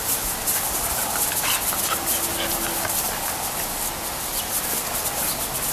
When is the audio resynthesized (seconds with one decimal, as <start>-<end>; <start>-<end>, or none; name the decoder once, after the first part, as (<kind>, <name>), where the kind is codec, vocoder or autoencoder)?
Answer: none